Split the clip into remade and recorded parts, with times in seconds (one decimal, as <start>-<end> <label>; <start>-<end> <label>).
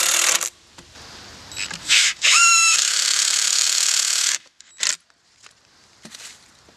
0.0-1.8 recorded; 1.8-4.7 remade; 4.7-6.8 recorded